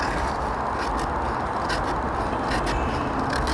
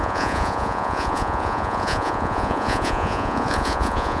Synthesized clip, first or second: second